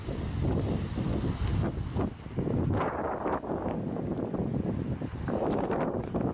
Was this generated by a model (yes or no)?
no